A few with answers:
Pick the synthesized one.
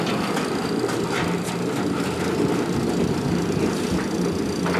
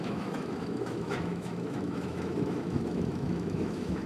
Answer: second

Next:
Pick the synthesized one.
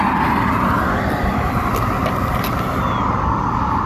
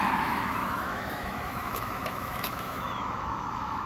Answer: second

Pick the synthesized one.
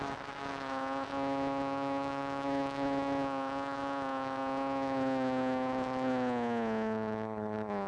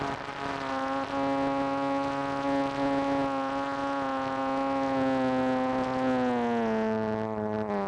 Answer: first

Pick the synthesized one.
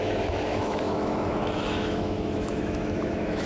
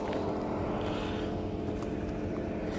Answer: first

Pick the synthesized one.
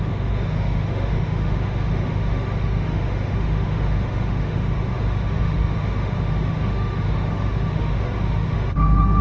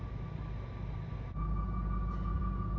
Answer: first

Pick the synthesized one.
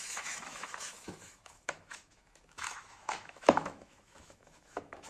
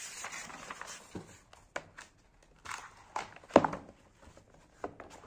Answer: first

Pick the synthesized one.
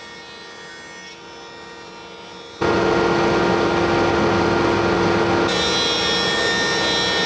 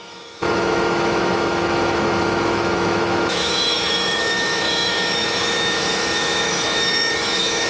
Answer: second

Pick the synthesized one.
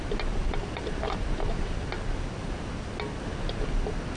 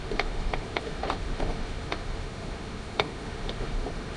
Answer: second